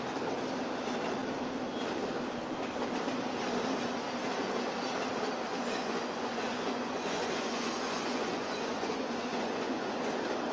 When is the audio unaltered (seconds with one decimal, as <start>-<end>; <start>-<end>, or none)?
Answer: 0.0-5.5; 10.1-10.5